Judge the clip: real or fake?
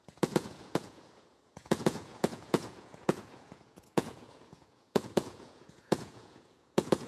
fake